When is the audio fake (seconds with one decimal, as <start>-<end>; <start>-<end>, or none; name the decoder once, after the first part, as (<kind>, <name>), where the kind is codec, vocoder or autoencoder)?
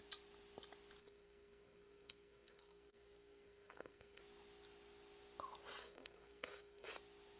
1.0-4.2 (codec, SNAC); 5.8-6.9